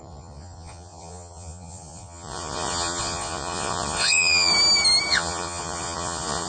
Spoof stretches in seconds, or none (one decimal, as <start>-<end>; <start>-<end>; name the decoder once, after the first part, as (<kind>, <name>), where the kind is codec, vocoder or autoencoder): 0.0-4.5 (vocoder, Vocos); 5.1-6.5